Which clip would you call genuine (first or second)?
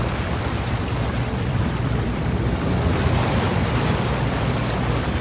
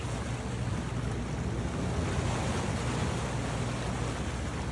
second